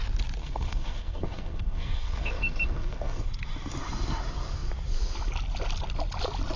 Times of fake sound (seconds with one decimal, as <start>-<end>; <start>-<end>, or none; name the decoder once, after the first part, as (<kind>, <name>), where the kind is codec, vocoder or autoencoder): 0.4-3.3 (codec, SNAC)

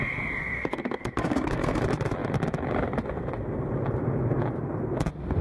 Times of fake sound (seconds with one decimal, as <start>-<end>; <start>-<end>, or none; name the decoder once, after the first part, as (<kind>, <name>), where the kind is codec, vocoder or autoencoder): 0.4-1.8 (codec, SNAC)

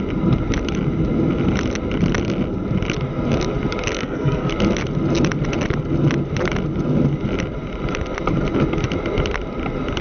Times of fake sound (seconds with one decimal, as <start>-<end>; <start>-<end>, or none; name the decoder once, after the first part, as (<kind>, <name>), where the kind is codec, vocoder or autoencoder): 3.9-4.5 (codec, SNAC)

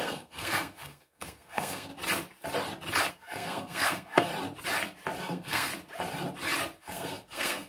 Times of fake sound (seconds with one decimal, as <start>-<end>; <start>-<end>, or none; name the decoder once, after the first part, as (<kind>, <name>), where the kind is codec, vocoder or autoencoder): 0.0-1.9 (codec, SNAC); 3.1-4.3; 5.2-5.7; 6.8-7.7

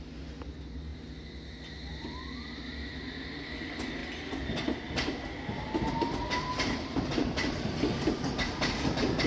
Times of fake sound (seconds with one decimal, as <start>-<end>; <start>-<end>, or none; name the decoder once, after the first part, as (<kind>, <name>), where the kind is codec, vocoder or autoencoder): none

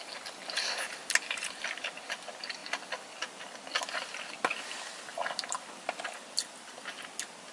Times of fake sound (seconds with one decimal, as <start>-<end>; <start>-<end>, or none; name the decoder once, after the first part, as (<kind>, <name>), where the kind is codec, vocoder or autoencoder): none